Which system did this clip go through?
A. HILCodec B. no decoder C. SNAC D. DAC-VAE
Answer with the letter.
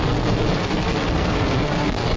C